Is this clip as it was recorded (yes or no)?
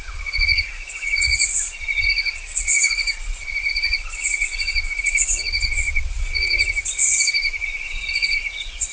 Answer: no